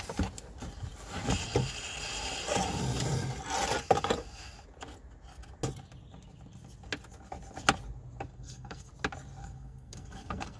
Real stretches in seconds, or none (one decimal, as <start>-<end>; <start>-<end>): 0.0-8.3; 8.9-9.4